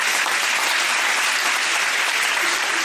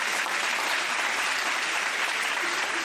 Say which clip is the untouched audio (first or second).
first